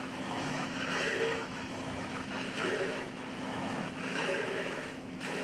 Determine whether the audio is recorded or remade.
remade